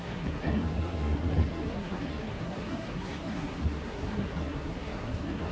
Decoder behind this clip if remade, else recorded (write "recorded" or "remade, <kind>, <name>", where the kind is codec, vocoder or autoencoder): remade, codec, SNAC